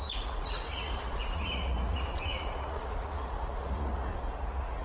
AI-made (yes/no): yes